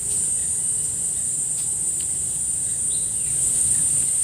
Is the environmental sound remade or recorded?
recorded